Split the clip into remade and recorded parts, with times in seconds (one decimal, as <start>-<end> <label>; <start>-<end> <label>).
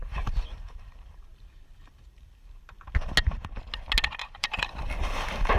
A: 0.0-2.6 remade; 2.6-4.2 recorded; 4.2-4.9 remade; 4.9-5.6 recorded